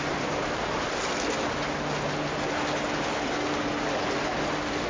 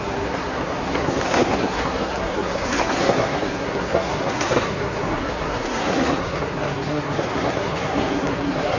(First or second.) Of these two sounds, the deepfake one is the second